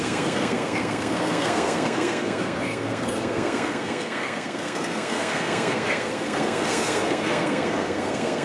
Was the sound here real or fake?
fake